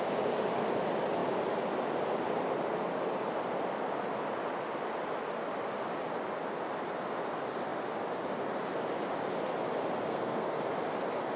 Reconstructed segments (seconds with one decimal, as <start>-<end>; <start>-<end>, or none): 10.1-10.6